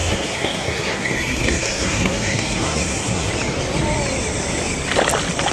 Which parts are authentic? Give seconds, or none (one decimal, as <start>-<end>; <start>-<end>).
3.3-5.5